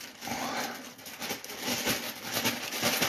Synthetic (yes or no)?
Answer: no